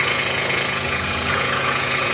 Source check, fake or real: fake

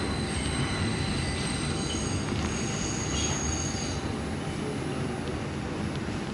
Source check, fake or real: real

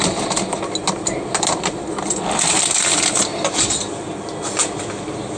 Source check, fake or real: real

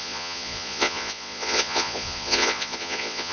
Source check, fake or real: fake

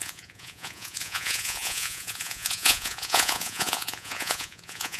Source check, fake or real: fake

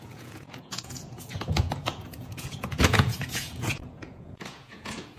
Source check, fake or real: fake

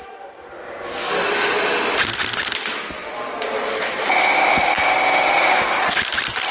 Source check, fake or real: real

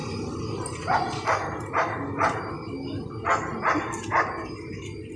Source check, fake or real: real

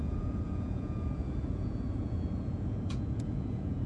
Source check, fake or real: fake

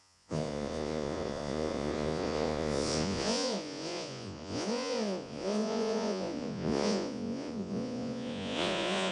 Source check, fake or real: fake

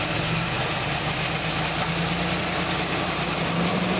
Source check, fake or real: real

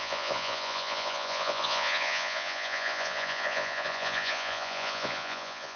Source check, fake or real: fake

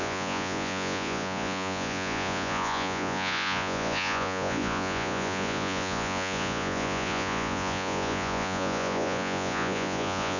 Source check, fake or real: fake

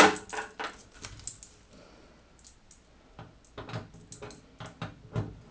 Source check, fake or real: real